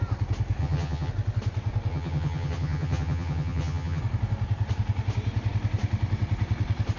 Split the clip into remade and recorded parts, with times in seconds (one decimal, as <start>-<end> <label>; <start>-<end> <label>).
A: 0.0-0.6 recorded; 0.6-1.1 remade; 1.1-1.9 recorded; 1.9-4.0 remade; 4.0-7.0 recorded